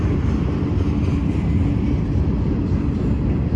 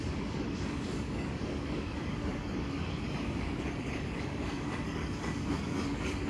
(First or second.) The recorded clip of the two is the first